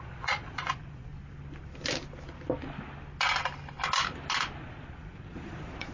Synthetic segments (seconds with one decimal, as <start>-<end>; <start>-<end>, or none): 0.0-1.1; 4.6-5.9

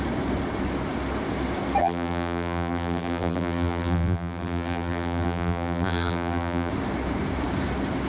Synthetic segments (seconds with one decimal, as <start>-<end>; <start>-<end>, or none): 1.8-6.7

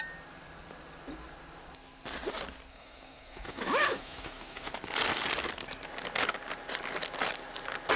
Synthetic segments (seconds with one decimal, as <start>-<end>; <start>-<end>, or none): 2.7-4.7